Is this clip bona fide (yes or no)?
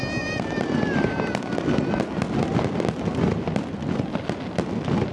yes